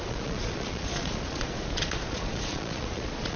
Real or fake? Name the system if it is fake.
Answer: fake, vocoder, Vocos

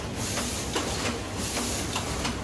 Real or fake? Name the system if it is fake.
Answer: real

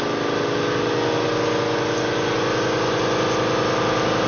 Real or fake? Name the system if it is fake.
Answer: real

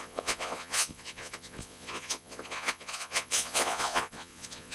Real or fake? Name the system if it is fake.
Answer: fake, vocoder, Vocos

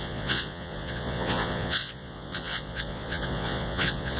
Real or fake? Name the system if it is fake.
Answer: fake, vocoder, Vocos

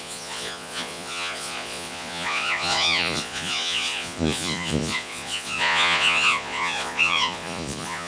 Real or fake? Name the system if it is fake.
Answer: fake, vocoder, Vocos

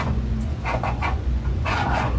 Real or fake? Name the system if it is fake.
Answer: fake, vocoder, Vocos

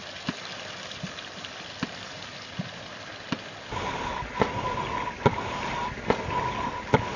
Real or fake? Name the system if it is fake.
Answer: real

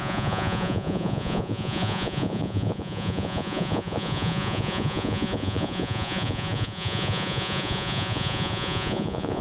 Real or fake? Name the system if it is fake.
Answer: fake, vocoder, Vocos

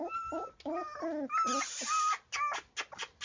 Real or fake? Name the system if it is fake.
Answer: real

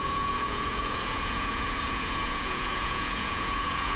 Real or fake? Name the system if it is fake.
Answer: fake, vocoder, Vocos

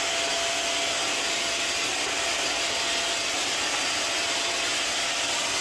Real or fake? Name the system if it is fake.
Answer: real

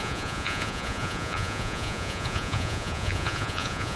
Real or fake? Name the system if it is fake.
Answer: fake, vocoder, Vocos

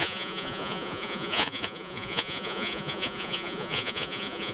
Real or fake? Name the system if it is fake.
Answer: fake, vocoder, Vocos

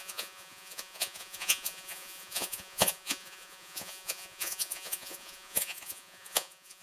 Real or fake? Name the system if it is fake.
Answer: fake, vocoder, Vocos